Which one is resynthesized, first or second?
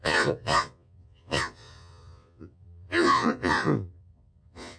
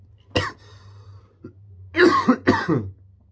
first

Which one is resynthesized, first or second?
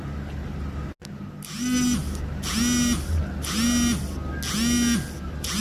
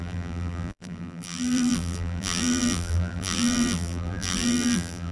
second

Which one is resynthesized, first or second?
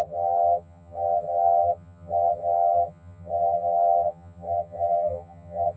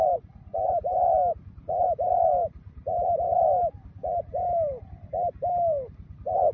first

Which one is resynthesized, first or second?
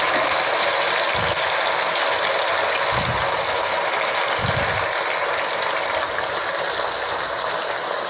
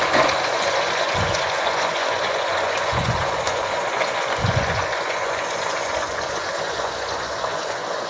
second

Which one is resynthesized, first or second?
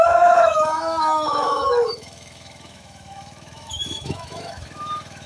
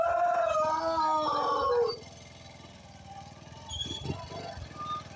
first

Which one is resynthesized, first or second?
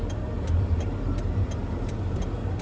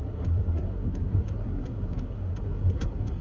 second